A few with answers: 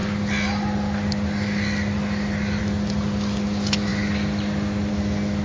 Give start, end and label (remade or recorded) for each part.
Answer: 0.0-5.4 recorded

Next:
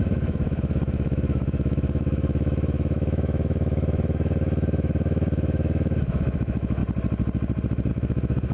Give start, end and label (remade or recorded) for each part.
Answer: 0.0-6.8 remade; 6.8-7.9 recorded; 7.9-8.5 remade

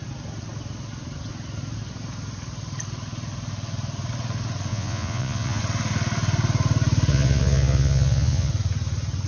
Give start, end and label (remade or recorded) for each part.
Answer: 0.0-4.7 recorded; 4.7-5.6 remade; 5.6-7.1 recorded; 7.1-8.5 remade; 8.5-9.3 recorded

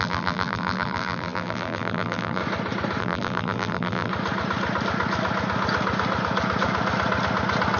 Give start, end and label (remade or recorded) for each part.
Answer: 0.0-2.4 remade; 2.4-3.0 recorded; 3.0-4.1 remade; 4.1-7.8 recorded

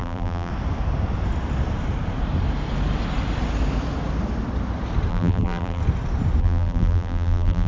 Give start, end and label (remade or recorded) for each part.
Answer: 0.0-0.5 remade; 0.5-5.1 recorded; 5.1-5.8 remade; 5.8-6.4 recorded; 6.4-7.7 remade